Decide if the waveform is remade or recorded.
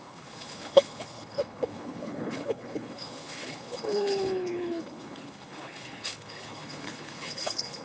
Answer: remade